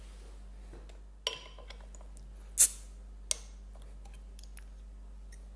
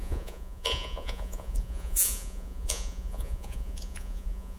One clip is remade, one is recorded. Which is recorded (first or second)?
first